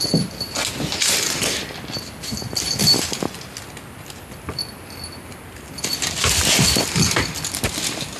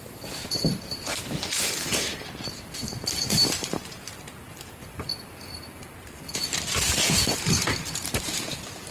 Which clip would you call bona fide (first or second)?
first